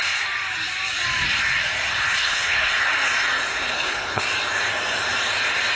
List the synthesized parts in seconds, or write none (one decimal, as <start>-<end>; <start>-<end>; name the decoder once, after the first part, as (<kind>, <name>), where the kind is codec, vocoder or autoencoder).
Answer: 2.2-2.7 (codec, HILCodec); 3.7-4.2